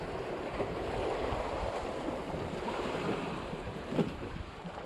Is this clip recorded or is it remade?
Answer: remade